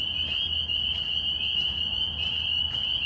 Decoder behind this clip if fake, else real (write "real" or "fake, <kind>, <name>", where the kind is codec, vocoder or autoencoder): real